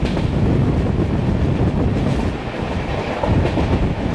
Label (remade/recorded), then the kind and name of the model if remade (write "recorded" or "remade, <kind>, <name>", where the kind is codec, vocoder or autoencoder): recorded